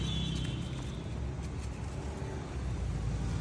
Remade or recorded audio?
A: recorded